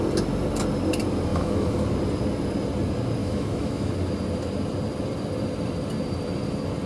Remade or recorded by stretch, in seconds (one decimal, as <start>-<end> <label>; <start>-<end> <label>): 0.0-1.3 recorded; 1.3-1.8 remade; 1.8-3.2 recorded; 3.2-3.9 remade; 3.9-6.9 recorded